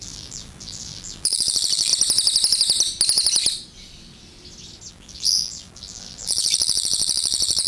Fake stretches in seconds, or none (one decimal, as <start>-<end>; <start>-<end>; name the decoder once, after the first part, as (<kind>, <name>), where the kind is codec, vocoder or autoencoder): 0.0-1.9 (vocoder, BigVGAN v2); 4.9-7.7